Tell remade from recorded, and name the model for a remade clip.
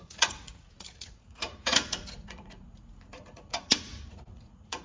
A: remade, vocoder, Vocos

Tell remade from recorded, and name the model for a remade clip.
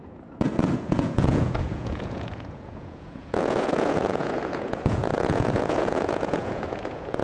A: remade, vocoder, Vocos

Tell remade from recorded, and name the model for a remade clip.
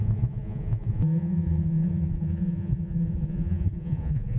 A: remade, vocoder, Vocos